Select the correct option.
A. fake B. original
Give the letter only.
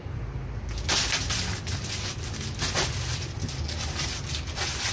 B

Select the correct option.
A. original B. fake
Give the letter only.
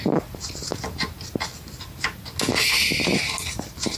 A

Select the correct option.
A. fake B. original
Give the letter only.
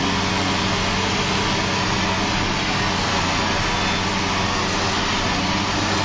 B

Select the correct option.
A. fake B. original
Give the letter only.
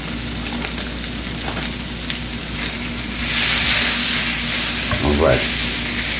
B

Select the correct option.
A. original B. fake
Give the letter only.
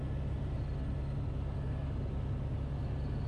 A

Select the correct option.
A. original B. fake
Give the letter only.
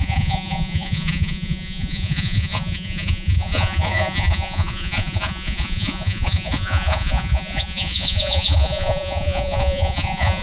B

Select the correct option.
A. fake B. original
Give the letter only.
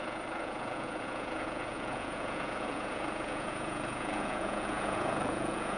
A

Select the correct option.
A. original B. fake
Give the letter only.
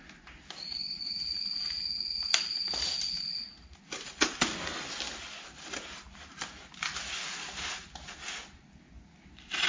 A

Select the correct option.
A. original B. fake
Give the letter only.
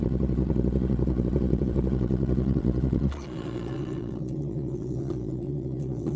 B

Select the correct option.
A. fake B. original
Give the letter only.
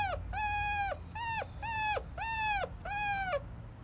B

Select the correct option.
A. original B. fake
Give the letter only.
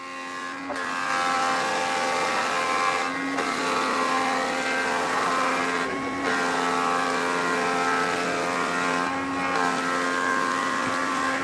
A